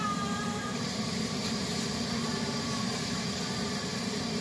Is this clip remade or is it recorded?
remade